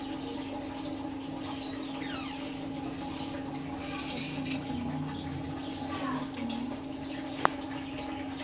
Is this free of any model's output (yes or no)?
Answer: yes